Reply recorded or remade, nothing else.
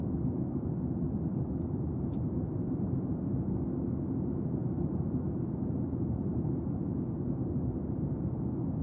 recorded